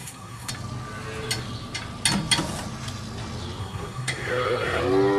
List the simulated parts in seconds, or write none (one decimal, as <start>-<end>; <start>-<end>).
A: 0.0-0.5; 3.6-4.8